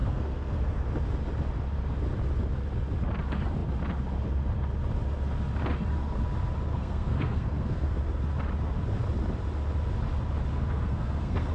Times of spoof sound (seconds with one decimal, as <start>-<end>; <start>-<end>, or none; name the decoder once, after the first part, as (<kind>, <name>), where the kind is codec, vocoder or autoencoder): 0.0-0.8 (codec, SNAC); 6.7-8.0; 10.5-11.5